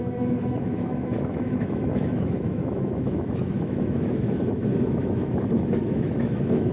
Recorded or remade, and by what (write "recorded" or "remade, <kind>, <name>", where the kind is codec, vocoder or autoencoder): remade, autoencoder, DAC-VAE